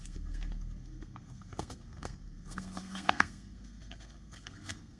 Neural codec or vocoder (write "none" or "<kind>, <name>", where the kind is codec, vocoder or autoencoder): codec, SNAC